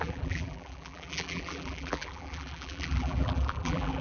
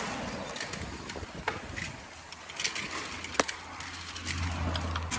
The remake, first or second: first